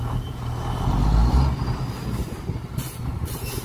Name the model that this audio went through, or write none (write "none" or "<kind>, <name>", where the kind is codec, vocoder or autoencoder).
none